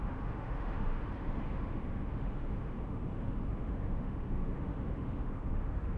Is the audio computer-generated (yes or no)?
yes